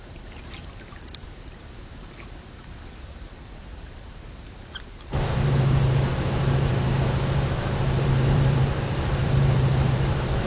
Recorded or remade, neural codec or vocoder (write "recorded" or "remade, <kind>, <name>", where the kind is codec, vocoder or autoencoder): remade, vocoder, BigVGAN v2